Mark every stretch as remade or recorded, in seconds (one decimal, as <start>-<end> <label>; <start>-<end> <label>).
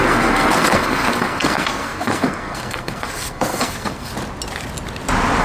0.0-4.1 remade; 4.1-5.4 recorded